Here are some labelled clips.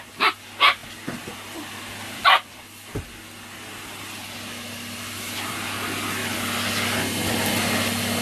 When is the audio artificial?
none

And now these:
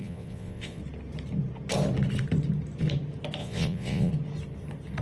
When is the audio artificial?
0.0-0.8 (vocoder, Vocos); 3.4-4.1

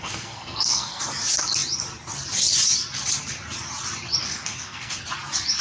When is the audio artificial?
0.0-1.0 (codec, SNAC); 4.2-4.9